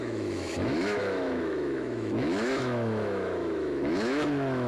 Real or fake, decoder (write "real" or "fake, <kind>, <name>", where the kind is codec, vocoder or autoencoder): fake, autoencoder, DAC-VAE